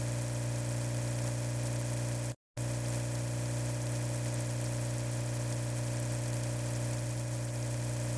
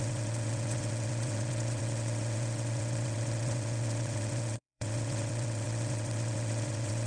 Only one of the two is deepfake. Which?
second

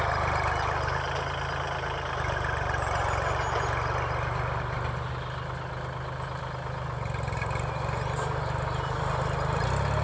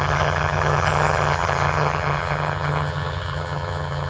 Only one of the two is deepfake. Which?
second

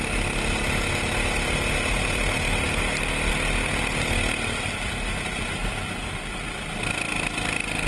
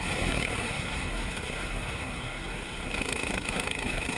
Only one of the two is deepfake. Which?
second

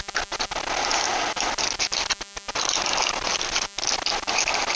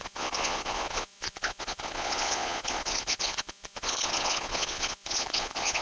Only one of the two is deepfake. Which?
second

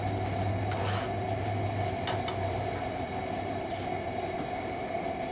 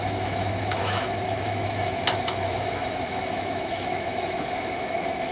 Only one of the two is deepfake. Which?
second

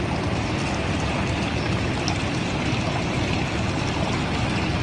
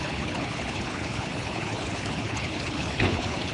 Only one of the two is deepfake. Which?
second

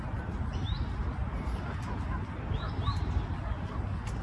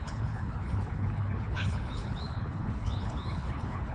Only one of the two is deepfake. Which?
second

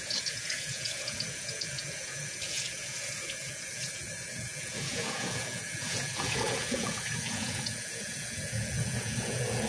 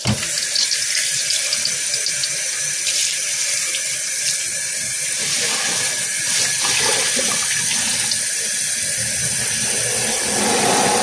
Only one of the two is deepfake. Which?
first